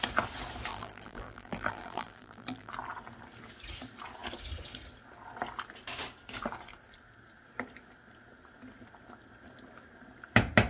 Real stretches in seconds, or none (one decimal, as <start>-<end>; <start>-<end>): 0.0-0.7; 2.7-10.7